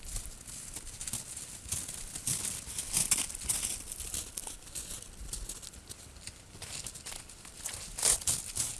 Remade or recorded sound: recorded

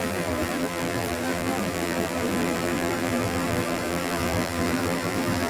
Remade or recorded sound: remade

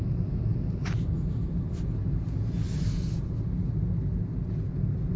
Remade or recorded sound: recorded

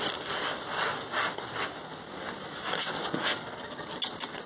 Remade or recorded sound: recorded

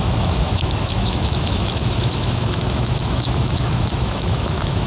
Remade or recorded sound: remade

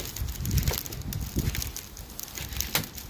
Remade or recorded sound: recorded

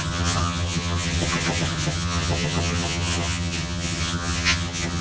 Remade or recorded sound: remade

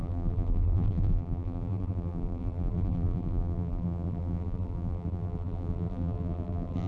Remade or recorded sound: remade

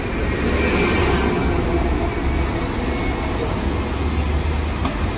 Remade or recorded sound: recorded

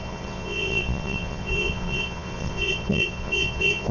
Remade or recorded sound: remade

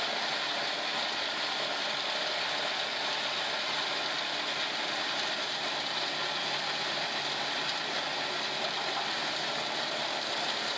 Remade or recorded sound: recorded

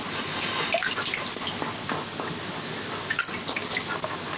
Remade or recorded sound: recorded